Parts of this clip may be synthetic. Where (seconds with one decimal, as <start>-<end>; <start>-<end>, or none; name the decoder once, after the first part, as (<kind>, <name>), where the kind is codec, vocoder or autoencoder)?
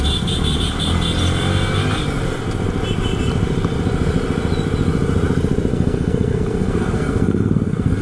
5.7-8.0 (codec, SNAC)